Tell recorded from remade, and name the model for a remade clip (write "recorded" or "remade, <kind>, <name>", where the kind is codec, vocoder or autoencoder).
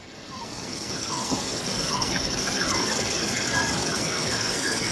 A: remade, codec, SNAC